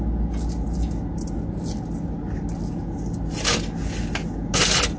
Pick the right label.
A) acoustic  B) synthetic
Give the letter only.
A